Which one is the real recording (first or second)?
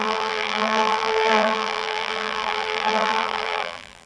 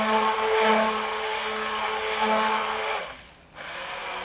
second